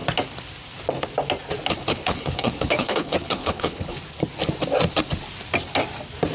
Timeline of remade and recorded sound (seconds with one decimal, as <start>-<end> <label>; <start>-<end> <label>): 0.0-1.9 recorded; 1.9-4.0 remade; 4.0-6.3 recorded